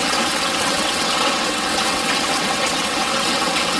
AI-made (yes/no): yes